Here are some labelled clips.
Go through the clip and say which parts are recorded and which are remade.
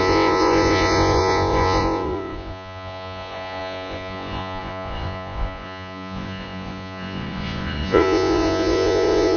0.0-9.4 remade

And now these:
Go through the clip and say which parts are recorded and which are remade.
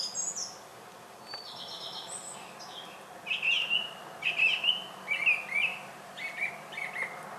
0.0-5.7 recorded; 5.7-6.5 remade; 6.5-7.4 recorded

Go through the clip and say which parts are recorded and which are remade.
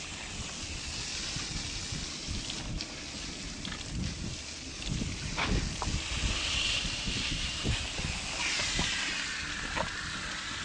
0.0-2.2 recorded; 2.2-5.3 remade; 5.3-10.6 recorded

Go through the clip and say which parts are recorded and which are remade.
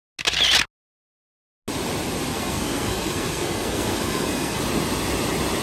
0.0-2.3 recorded; 2.3-4.6 remade; 4.6-5.6 recorded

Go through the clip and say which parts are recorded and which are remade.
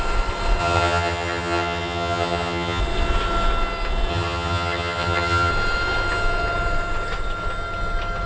0.0-0.6 recorded; 0.6-2.8 remade; 2.8-4.1 recorded; 4.1-5.5 remade; 5.5-8.3 recorded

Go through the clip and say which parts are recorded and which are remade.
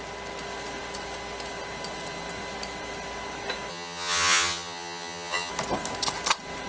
0.0-3.7 recorded; 3.7-5.5 remade; 5.5-6.7 recorded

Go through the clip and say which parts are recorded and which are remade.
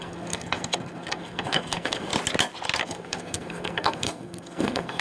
0.0-2.1 remade; 2.1-2.8 recorded; 2.8-5.0 remade